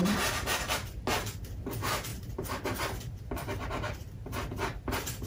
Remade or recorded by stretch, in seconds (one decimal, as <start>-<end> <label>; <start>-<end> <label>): 0.0-0.9 remade; 0.9-2.1 recorded; 2.1-4.1 remade; 4.1-5.3 recorded